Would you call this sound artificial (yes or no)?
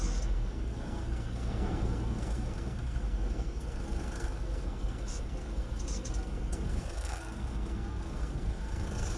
yes